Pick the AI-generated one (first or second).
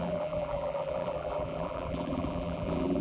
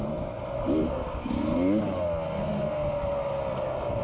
first